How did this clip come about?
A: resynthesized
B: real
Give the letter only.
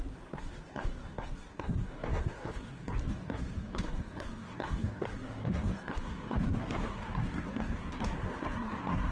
A